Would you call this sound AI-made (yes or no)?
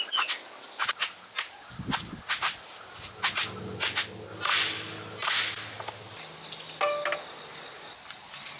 no